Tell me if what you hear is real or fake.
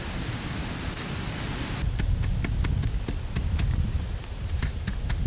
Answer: real